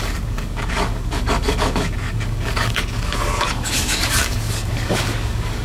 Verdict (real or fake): fake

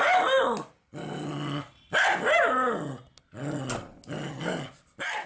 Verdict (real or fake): real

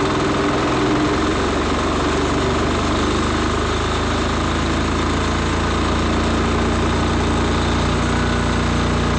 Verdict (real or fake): real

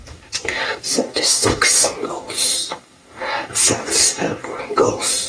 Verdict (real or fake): fake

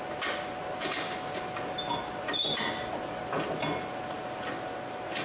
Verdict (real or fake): real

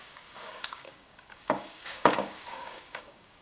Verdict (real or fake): fake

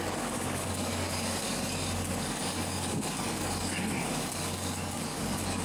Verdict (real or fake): fake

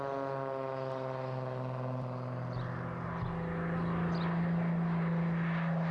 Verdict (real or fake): real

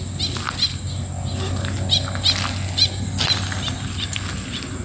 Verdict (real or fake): real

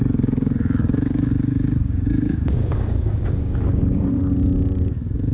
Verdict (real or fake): fake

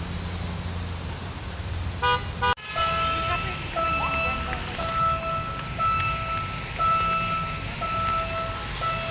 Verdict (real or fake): real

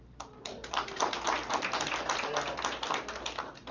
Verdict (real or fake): real